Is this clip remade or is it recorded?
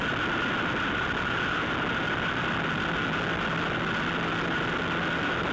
recorded